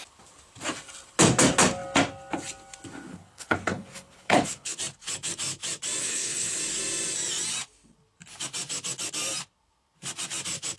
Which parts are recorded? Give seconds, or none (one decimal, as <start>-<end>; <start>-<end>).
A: 0.0-3.1; 4.8-6.0; 6.6-10.8